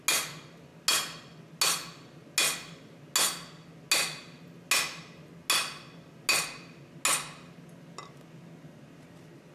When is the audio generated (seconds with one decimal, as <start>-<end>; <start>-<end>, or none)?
none